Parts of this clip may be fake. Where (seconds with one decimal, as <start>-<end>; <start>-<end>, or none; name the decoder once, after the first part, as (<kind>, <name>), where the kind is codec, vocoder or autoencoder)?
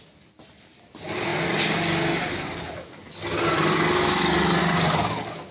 none